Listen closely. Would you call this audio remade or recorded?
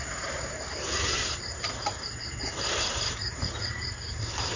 remade